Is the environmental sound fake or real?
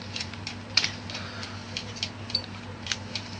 fake